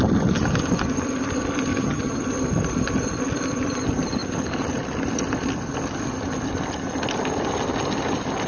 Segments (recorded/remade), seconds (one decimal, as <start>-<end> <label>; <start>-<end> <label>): 0.0-1.7 recorded; 1.7-2.2 remade; 2.2-8.5 recorded